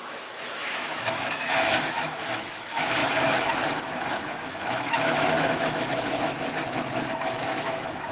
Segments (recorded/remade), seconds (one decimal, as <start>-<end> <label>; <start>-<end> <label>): 0.0-8.1 remade